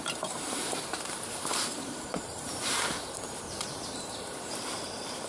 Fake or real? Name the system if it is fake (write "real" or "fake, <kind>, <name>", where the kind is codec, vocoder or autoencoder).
fake, vocoder, BigVGAN v2